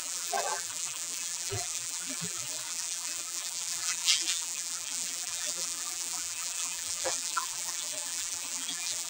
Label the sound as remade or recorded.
remade